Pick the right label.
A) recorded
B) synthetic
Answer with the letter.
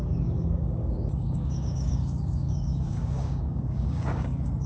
B